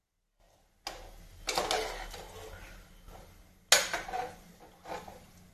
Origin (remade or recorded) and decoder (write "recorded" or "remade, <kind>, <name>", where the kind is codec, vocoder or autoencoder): recorded